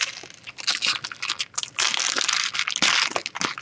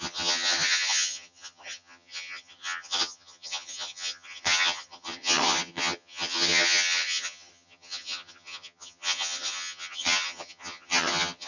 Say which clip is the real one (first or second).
first